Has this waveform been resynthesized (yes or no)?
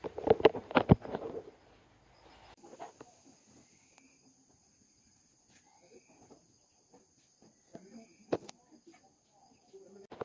no